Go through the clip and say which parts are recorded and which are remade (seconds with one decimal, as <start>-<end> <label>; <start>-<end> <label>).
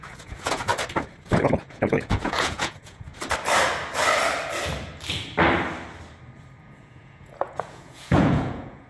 0.0-0.7 remade; 0.7-1.2 recorded; 1.2-3.1 remade; 3.1-6.6 recorded; 6.6-8.9 remade